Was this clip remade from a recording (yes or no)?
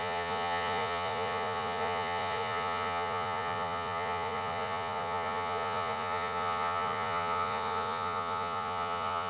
yes